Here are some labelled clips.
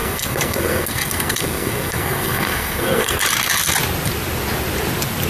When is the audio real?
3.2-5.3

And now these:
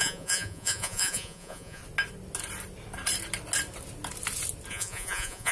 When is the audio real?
1.8-4.7

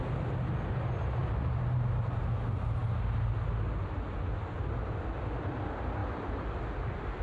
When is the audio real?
0.0-1.2; 2.2-7.2

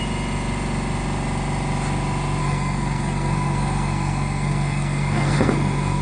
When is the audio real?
0.0-2.4

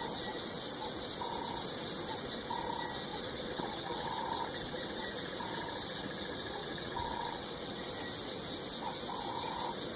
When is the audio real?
0.0-3.1; 4.1-6.6; 7.9-10.0